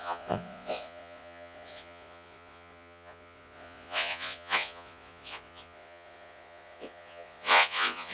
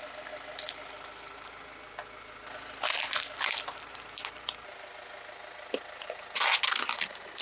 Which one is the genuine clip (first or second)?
second